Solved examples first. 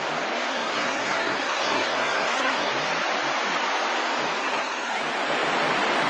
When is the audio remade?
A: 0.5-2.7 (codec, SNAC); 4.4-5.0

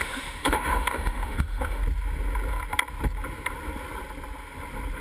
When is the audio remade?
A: 0.0-1.8 (autoencoder, DAC-VAE)

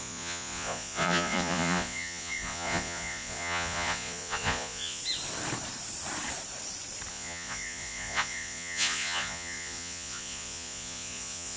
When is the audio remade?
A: 0.0-5.0 (vocoder, Vocos); 7.1-11.6

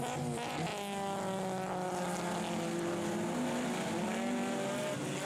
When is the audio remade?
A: none

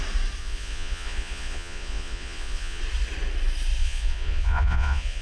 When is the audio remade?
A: 0.4-2.8 (vocoder, Vocos); 3.8-5.2

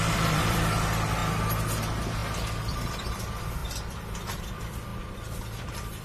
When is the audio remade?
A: 0.0-1.2 (vocoder, BigVGAN v2); 1.8-2.2; 2.8-6.0